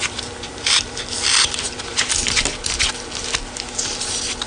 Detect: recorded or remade recorded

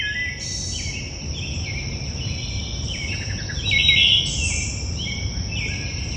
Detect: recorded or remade recorded